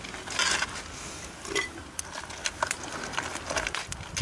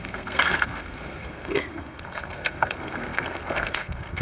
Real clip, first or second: first